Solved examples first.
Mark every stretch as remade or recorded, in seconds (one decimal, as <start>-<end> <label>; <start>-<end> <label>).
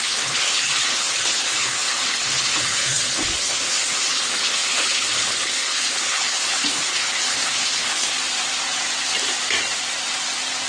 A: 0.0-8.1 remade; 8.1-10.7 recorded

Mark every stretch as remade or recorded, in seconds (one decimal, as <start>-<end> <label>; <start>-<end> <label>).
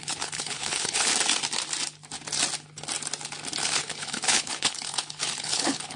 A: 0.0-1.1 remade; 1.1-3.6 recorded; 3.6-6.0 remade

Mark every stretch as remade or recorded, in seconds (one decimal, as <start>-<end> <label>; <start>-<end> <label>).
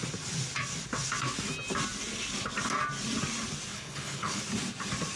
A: 0.0-3.7 recorded; 3.7-4.4 remade; 4.4-5.2 recorded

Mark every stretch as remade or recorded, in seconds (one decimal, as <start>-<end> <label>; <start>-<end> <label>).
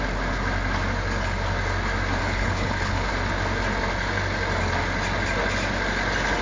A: 0.0-2.2 recorded; 2.2-3.1 remade; 3.1-6.4 recorded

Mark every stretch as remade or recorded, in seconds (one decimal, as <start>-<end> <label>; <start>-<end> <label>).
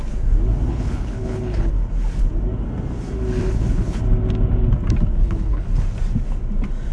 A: 0.0-0.7 recorded; 0.7-1.7 remade; 1.7-3.4 recorded; 3.4-4.0 remade; 4.0-5.2 recorded; 5.2-5.8 remade; 5.8-6.9 recorded